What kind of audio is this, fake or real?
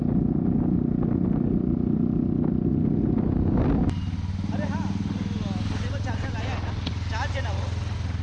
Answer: real